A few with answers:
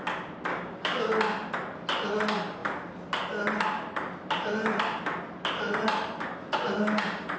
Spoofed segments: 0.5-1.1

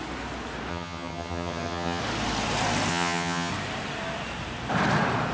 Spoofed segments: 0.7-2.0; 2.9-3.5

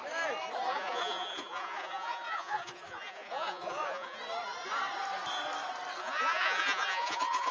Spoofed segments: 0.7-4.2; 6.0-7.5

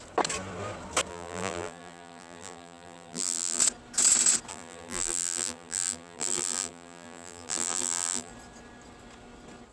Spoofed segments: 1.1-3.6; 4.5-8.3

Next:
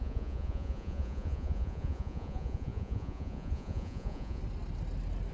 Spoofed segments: 0.0-4.4